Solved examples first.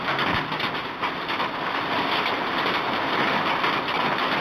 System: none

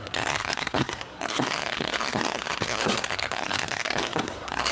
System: codec, SNAC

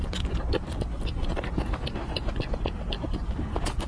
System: none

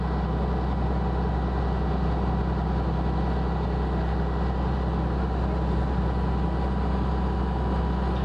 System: none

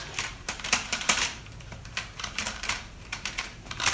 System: vocoder, BigVGAN v2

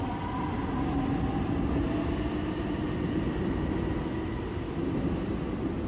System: vocoder, BigVGAN v2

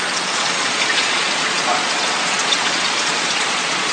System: vocoder, Vocos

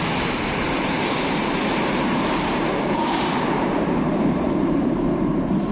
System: vocoder, BigVGAN v2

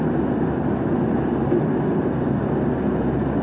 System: none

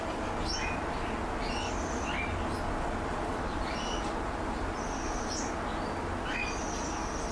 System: none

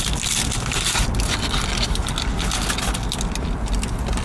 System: none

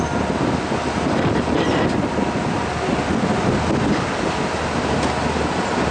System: none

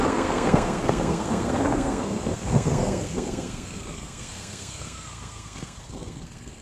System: codec, SNAC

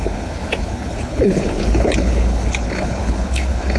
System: codec, HILCodec